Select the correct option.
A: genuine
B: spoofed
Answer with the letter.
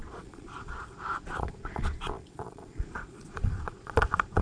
B